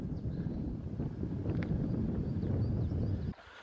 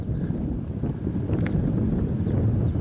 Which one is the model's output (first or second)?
first